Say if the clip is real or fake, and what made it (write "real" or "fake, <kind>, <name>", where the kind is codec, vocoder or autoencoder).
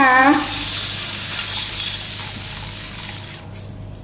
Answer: real